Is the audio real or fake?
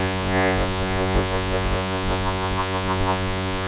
fake